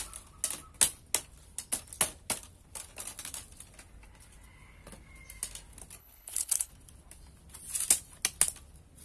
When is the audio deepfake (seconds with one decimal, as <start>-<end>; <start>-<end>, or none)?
6.0-6.7